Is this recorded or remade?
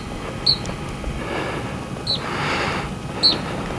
recorded